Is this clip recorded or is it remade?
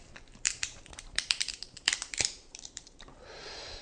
remade